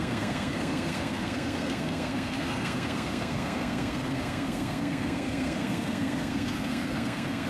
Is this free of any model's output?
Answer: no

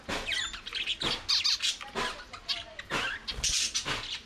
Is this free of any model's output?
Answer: yes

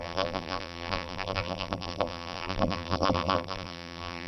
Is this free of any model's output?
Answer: no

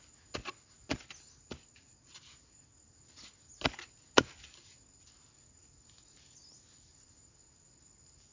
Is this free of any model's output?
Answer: yes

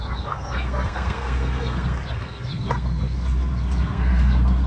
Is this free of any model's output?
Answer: no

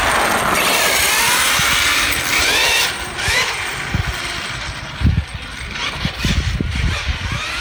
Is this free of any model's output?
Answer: yes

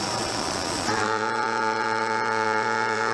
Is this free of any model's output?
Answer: no